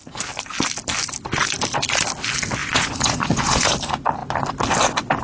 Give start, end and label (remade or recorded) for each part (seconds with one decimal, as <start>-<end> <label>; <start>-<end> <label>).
0.0-2.6 recorded; 2.6-3.7 remade; 3.7-5.2 recorded